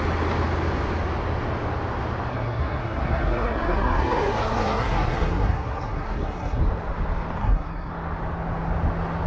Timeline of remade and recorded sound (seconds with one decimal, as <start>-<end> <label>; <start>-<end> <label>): 0.0-2.3 recorded; 2.3-6.6 remade; 6.6-7.4 recorded; 7.4-7.9 remade; 7.9-9.3 recorded